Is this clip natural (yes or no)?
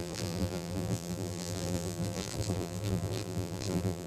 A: no